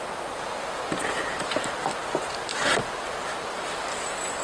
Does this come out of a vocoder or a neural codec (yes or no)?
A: no